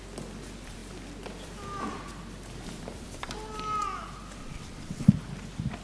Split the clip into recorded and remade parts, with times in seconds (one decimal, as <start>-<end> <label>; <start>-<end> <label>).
0.0-4.4 recorded; 4.4-5.1 remade; 5.1-5.8 recorded